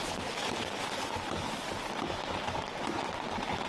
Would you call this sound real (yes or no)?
yes